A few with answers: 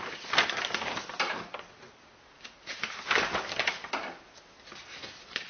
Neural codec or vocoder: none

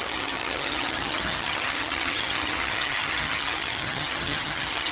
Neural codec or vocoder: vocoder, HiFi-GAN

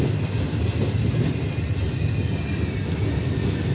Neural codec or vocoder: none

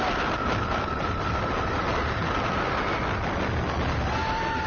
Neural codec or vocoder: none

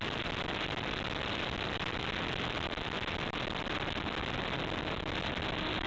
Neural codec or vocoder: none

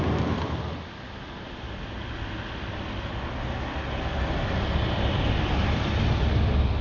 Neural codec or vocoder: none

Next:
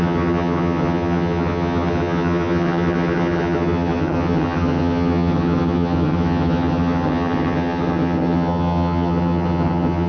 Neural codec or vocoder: vocoder, HiFi-GAN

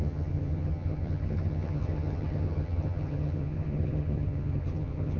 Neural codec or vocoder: vocoder, HiFi-GAN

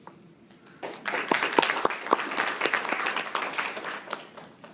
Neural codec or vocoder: none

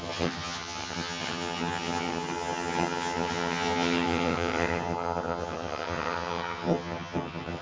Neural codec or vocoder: vocoder, HiFi-GAN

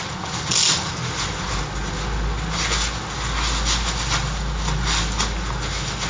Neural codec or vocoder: none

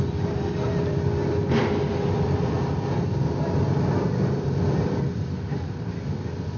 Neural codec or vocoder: none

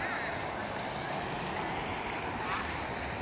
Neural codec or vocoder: none